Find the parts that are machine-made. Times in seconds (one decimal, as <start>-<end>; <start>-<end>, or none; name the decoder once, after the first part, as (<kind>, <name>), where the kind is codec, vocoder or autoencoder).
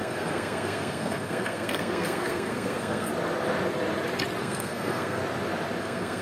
0.0-3.1 (codec, SNAC); 4.4-5.2; 5.8-6.2